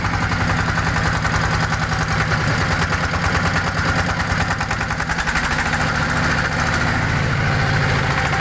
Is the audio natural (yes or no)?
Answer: yes